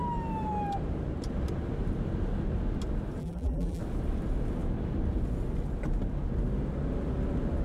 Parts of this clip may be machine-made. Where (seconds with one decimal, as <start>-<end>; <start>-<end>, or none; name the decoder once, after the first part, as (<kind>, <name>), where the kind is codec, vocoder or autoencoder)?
3.2-3.8 (vocoder, BigVGAN v2)